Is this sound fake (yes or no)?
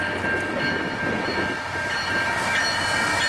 no